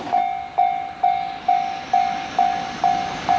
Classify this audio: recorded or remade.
recorded